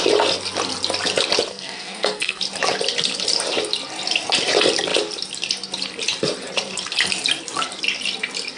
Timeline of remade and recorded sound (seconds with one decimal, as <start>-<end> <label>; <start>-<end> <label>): 0.0-1.5 recorded; 1.5-2.4 remade; 2.4-8.6 recorded